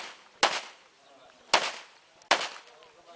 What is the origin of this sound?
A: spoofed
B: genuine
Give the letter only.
B